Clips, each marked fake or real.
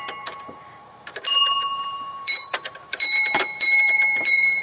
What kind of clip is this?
fake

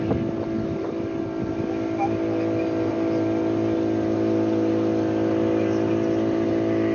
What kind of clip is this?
real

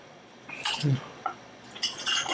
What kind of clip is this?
fake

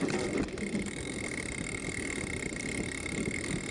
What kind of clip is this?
real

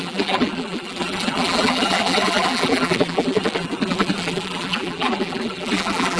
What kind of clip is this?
fake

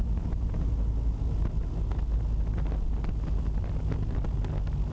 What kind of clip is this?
real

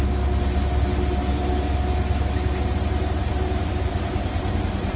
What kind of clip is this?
real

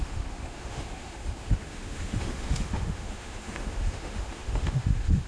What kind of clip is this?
fake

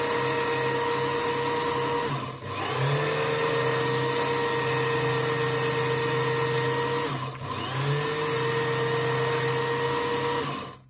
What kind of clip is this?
real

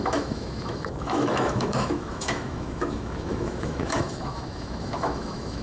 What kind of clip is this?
fake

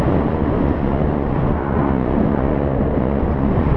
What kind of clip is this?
fake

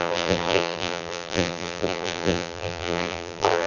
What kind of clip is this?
fake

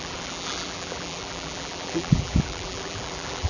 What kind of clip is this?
fake